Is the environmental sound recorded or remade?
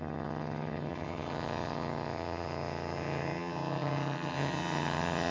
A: remade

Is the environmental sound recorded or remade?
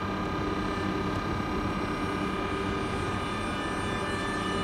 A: recorded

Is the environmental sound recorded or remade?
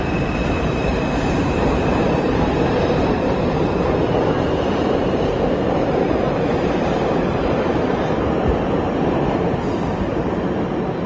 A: remade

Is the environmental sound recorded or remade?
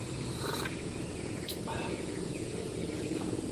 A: remade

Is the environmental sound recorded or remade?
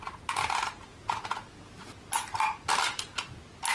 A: recorded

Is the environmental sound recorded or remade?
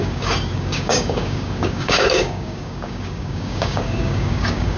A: remade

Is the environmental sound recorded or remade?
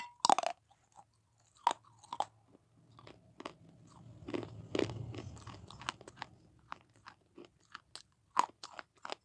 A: recorded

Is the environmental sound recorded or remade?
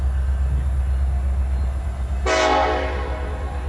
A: recorded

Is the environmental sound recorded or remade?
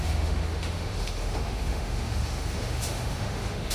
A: remade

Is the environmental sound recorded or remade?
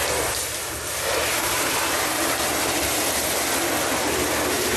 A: recorded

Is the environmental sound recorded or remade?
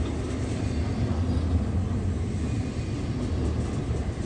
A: recorded